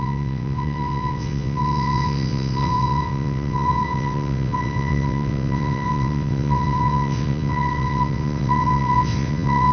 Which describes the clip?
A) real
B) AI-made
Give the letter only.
B